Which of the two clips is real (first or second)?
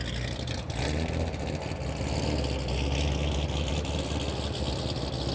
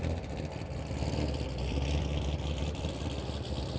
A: first